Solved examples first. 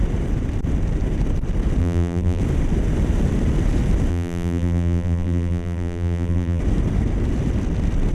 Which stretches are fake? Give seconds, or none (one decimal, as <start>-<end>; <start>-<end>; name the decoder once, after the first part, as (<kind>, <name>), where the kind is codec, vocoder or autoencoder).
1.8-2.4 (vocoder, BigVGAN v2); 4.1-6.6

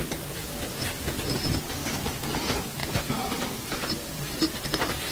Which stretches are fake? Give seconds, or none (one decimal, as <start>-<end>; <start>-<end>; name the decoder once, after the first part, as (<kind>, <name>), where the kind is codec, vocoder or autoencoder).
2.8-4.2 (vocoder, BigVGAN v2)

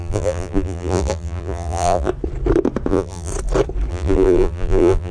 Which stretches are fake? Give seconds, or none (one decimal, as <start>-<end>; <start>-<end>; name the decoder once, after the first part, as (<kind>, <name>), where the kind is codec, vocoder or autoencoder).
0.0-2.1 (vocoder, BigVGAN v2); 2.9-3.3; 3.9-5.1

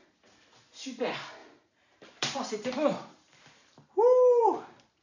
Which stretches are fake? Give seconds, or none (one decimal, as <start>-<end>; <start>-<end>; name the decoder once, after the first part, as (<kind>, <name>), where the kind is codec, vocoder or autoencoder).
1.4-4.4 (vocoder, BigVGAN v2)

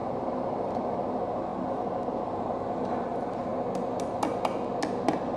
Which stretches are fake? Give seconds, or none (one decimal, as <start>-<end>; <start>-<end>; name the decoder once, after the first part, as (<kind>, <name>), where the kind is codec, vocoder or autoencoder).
0.0-1.5 (vocoder, BigVGAN v2); 2.1-3.5

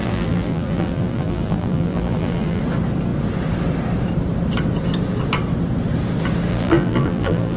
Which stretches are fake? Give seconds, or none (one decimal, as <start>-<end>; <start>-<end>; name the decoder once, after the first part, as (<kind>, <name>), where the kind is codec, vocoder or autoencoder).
0.0-2.6 (vocoder, BigVGAN v2); 6.5-7.6

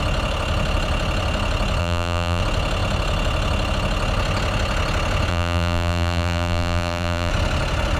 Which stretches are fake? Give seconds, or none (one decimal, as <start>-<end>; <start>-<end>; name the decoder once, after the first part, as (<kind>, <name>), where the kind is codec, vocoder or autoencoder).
1.8-2.4 (vocoder, BigVGAN v2); 5.3-7.3